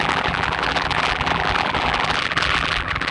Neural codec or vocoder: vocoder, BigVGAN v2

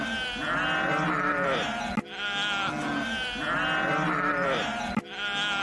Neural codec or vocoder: none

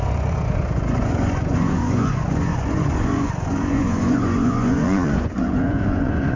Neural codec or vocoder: vocoder, Vocos